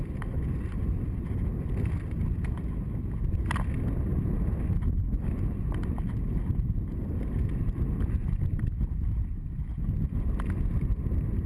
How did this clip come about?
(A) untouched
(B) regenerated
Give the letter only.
A